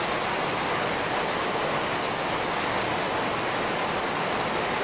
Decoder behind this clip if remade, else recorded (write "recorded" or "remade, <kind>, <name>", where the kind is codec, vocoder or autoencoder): recorded